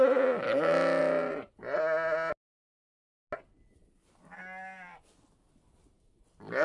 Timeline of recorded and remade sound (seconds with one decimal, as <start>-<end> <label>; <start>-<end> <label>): 0.0-6.6 recorded